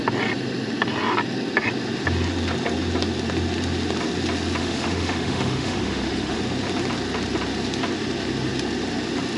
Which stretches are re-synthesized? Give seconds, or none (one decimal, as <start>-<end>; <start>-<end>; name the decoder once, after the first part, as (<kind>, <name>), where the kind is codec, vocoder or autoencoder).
4.6-6.4 (autoencoder, DAC-VAE)

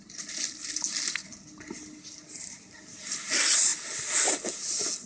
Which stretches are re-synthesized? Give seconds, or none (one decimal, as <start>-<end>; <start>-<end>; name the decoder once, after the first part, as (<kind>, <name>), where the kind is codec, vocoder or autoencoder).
none

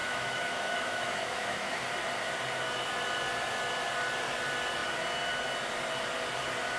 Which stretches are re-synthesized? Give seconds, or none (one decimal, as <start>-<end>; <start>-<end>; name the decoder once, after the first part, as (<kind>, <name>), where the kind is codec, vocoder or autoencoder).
0.0-1.9 (autoencoder, DAC-VAE)

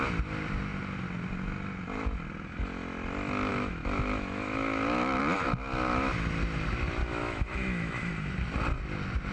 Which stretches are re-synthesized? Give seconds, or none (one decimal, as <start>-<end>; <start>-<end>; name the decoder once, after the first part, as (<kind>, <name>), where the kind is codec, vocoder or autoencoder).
3.5-5.2 (autoencoder, DAC-VAE); 7.0-8.1